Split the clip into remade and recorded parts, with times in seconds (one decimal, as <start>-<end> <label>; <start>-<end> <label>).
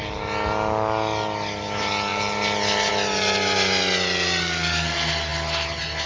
0.0-6.1 recorded